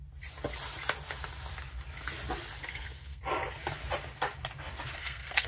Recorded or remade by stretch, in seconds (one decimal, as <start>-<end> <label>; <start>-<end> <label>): 0.0-2.7 recorded; 2.7-3.2 remade; 3.2-5.0 recorded; 5.0-5.5 remade